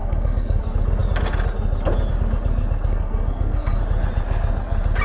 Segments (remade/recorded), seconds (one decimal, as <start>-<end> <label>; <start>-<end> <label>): 0.0-0.6 remade; 0.6-2.9 recorded; 2.9-3.8 remade; 3.8-5.0 recorded